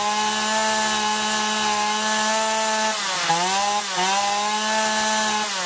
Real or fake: real